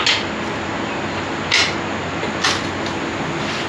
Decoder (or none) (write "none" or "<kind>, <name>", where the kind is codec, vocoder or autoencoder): none